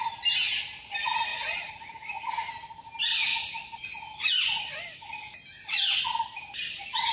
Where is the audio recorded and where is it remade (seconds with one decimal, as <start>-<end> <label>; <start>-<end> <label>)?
0.0-1.3 recorded; 1.3-2.3 remade; 2.3-7.1 recorded